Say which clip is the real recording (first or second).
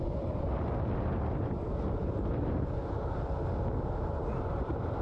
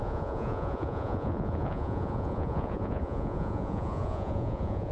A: first